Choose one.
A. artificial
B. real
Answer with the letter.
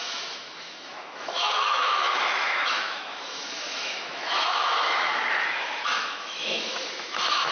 A